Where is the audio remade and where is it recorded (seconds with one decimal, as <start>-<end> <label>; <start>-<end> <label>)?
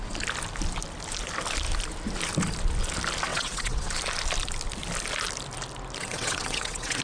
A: 0.0-3.3 recorded; 3.3-3.9 remade; 3.9-6.0 recorded; 6.0-7.0 remade